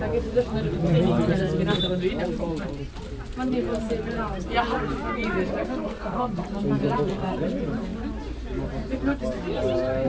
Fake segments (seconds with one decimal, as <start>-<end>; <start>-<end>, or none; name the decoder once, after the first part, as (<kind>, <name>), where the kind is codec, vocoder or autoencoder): 5.6-6.2 (codec, SNAC)